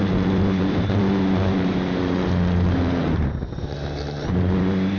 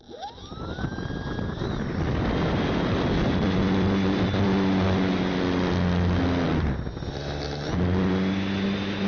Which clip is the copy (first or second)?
first